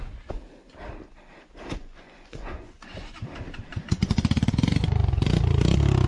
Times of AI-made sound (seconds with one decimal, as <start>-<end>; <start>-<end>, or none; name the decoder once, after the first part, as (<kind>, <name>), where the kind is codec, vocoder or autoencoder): 1.8-3.1 (vocoder, Vocos); 3.7-5.3